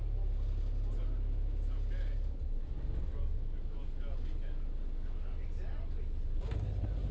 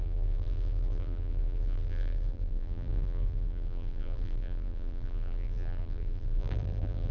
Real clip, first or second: first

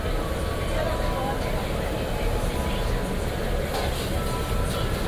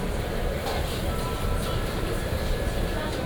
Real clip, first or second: first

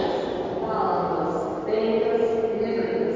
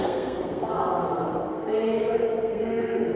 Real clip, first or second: first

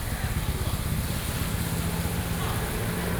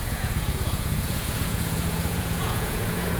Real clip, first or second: first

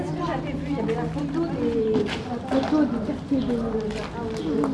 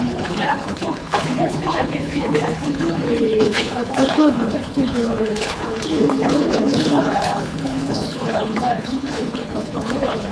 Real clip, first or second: first